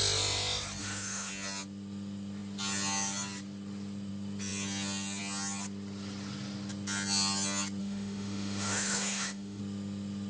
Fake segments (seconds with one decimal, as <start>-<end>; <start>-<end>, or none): 0.8-1.3; 7.8-9.6